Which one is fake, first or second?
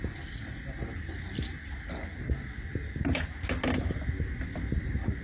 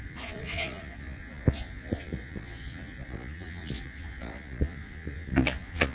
second